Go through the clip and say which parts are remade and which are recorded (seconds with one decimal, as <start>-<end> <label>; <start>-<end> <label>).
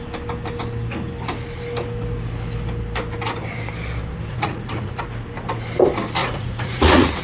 0.0-4.3 recorded; 4.3-5.0 remade; 5.0-6.2 recorded; 6.2-7.2 remade